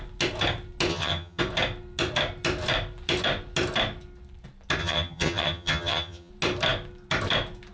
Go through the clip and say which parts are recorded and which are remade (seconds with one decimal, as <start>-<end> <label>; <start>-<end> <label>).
0.0-0.9 recorded; 0.9-1.4 remade; 1.4-4.8 recorded; 4.8-6.3 remade; 6.3-7.7 recorded